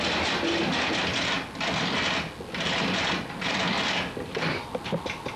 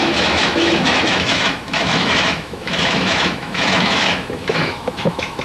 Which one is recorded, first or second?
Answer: first